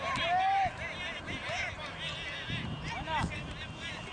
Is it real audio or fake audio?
real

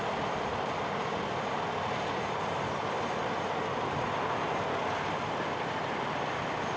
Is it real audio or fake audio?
real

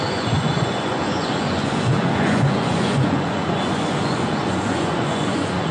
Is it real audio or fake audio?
fake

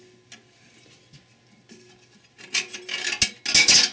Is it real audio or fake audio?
real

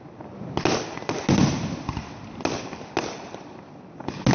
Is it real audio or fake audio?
real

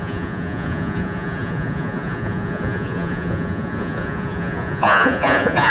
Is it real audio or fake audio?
fake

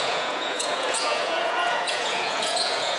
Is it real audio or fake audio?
fake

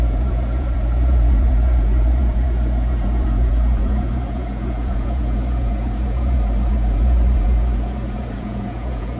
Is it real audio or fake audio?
fake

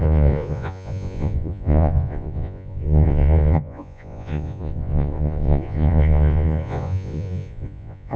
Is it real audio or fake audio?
fake